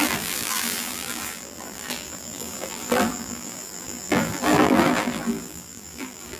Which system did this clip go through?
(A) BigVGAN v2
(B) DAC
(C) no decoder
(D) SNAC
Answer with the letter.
A